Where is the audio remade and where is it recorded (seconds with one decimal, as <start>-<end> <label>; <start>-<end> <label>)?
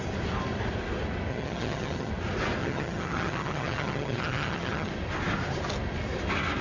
0.0-1.3 recorded; 1.3-2.1 remade; 2.1-2.6 recorded; 2.6-4.9 remade; 4.9-6.6 recorded